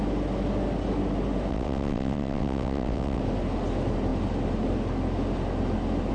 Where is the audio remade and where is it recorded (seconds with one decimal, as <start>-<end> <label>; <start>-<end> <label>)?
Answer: 0.0-1.5 recorded; 1.5-3.2 remade; 3.2-6.1 recorded